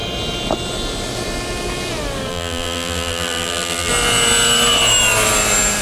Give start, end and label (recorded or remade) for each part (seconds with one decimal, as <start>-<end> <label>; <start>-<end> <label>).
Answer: 0.0-2.3 recorded; 2.3-3.9 remade; 3.9-5.8 recorded